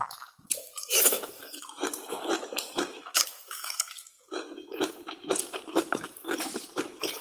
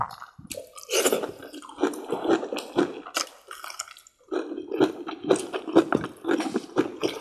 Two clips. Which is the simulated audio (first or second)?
first